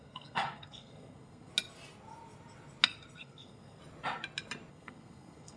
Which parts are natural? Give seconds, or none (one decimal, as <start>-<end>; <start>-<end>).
1.5-3.2; 3.8-4.7